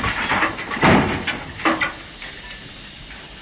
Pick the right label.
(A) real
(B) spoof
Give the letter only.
B